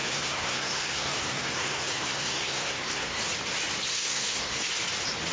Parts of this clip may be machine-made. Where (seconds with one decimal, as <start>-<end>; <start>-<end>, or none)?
0.0-3.2; 3.9-4.6